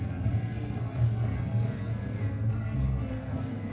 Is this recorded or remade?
remade